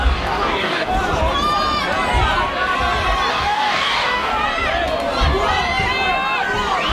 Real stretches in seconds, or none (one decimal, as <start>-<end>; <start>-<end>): 0.9-3.3; 4.3-6.9